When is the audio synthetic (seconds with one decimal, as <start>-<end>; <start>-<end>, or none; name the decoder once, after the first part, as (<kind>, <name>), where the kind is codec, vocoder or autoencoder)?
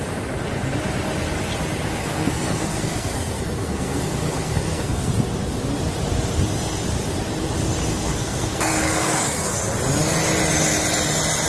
2.0-5.1 (codec, SNAC); 7.9-9.5